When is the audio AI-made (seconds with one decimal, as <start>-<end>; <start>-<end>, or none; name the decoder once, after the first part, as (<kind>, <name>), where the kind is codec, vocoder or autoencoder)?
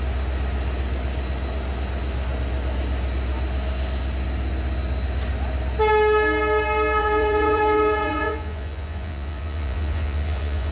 7.0-10.7 (vocoder, Vocos)